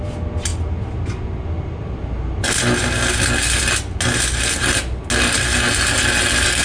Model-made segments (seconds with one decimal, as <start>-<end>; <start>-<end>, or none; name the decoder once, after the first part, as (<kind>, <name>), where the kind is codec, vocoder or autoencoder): none